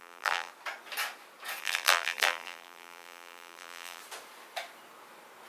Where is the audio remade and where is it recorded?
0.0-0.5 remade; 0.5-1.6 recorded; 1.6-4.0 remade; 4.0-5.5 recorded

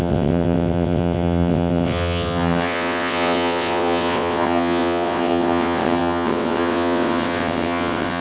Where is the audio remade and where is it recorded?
0.0-8.2 remade

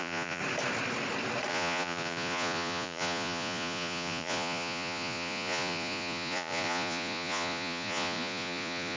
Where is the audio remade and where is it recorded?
0.0-0.4 remade; 0.4-1.5 recorded; 1.5-9.0 remade

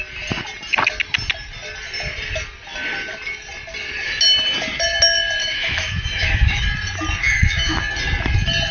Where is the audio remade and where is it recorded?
0.0-5.4 recorded; 5.4-6.6 remade; 6.6-7.2 recorded; 7.2-7.8 remade; 7.8-8.7 recorded

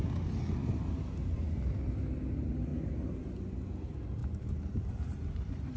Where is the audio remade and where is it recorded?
0.0-0.6 recorded; 0.6-1.7 remade; 1.7-2.7 recorded; 2.7-3.2 remade; 3.2-4.2 recorded; 4.2-5.8 remade

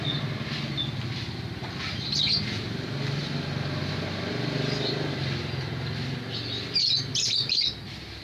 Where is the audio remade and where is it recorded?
0.0-3.2 recorded; 3.2-4.9 remade; 4.9-7.1 recorded; 7.1-7.7 remade; 7.7-8.2 recorded